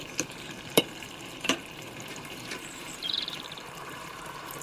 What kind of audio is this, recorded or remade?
remade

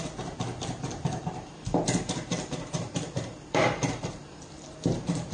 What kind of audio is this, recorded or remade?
remade